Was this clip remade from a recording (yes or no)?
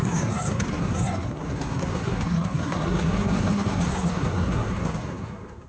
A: yes